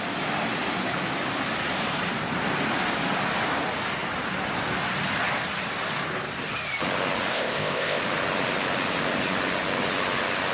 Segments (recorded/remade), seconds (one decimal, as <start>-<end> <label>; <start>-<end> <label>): 0.0-7.3 recorded; 7.3-8.0 remade; 8.0-10.5 recorded